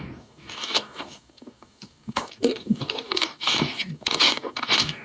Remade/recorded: remade